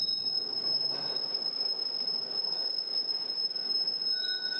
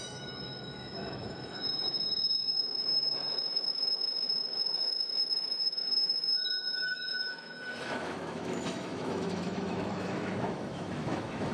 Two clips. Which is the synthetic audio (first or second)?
second